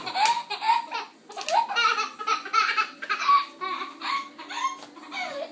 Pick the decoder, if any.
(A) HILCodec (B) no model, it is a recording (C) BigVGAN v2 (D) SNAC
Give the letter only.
B